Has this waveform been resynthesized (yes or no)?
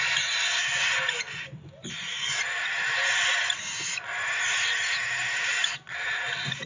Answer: no